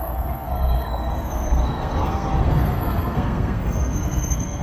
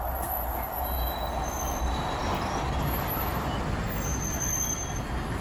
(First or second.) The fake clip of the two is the first